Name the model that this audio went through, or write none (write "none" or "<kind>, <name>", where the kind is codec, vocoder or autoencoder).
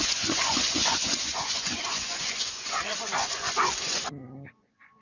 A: vocoder, Vocos